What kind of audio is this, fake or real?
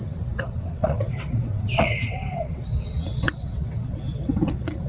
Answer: fake